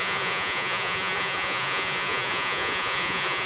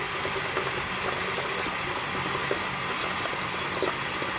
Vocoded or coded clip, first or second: first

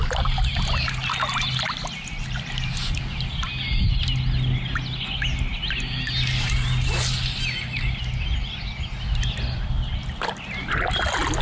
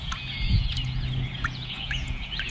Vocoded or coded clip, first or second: second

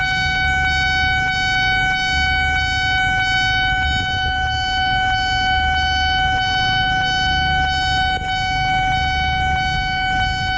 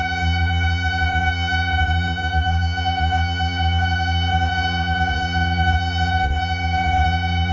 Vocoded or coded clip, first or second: second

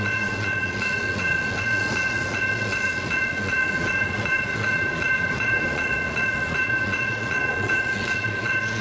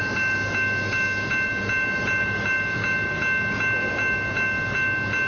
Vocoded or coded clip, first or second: first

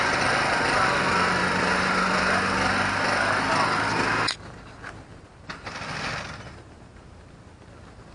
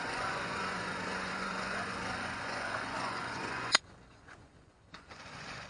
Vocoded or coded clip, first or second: second